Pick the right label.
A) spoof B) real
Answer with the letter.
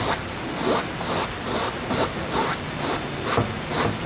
B